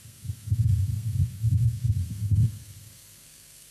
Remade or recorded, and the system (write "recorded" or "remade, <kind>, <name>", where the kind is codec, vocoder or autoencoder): remade, codec, SNAC